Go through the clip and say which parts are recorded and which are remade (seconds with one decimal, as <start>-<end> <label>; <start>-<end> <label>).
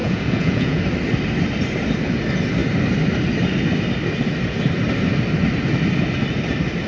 0.0-0.8 remade; 0.8-6.9 recorded